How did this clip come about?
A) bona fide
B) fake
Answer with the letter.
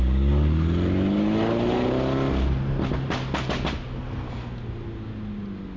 A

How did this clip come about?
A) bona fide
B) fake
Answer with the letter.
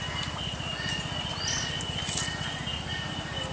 A